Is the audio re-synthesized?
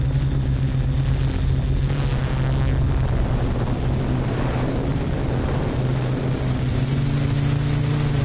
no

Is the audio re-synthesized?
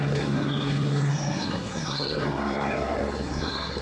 yes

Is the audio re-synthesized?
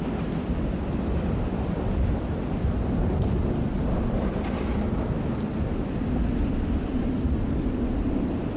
no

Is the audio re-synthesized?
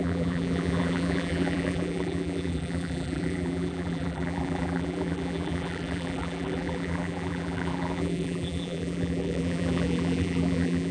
yes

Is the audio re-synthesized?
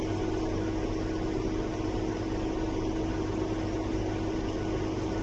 no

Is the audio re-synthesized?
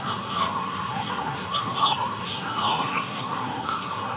yes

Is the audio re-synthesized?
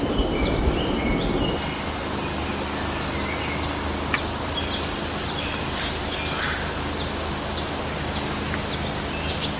no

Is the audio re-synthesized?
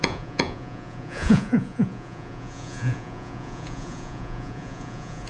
yes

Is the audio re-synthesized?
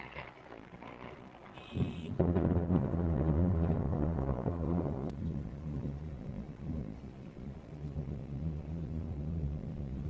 yes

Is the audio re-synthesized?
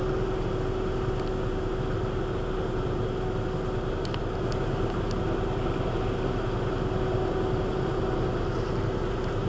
no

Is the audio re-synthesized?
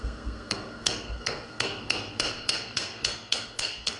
yes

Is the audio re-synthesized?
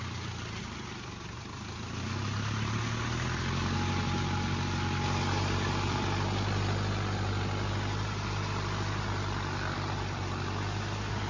no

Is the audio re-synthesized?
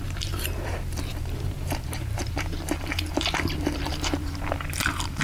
yes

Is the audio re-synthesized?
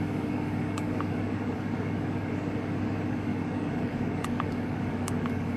yes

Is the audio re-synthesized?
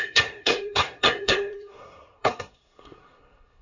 yes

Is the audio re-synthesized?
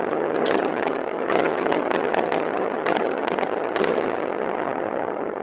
yes